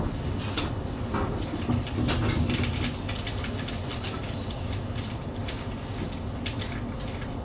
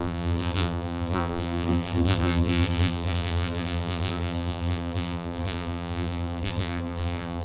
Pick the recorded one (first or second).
first